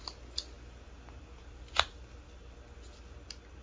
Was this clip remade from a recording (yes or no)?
no